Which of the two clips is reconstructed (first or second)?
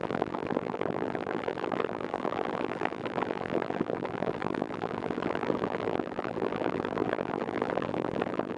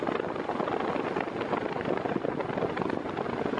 first